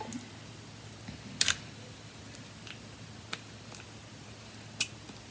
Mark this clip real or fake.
real